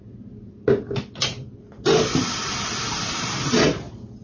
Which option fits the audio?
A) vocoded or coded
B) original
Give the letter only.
B